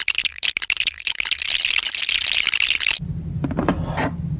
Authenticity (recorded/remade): recorded